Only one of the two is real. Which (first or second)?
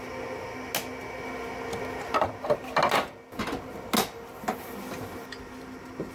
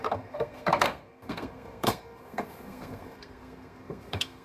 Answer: first